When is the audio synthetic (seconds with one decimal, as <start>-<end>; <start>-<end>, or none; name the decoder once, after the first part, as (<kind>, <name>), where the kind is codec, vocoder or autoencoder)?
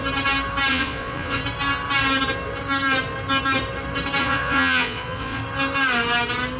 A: 0.7-1.4 (vocoder, Vocos); 4.2-5.4